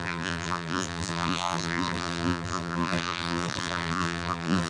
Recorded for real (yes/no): no